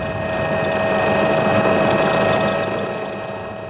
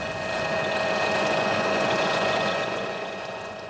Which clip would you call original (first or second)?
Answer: first